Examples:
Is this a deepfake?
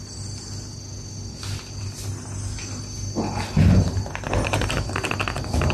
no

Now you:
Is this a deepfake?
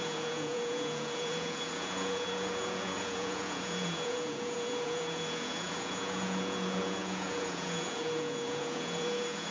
yes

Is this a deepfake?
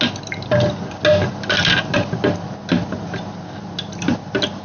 no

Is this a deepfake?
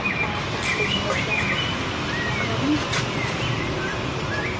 no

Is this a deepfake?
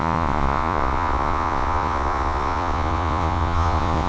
yes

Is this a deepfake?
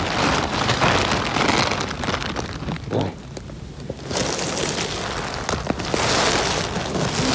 no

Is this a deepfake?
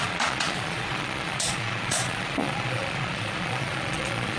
yes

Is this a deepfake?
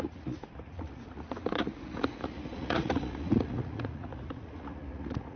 yes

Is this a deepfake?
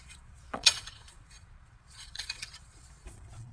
yes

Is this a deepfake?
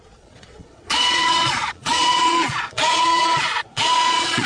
yes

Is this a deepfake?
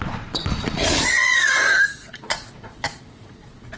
yes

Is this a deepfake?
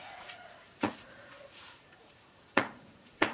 yes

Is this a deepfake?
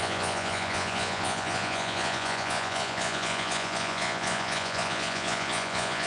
yes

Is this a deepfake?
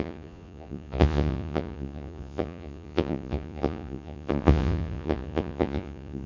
yes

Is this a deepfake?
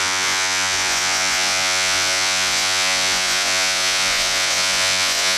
yes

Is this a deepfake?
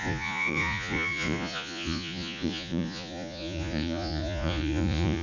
yes